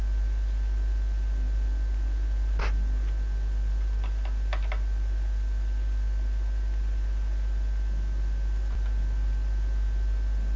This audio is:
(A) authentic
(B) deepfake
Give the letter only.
A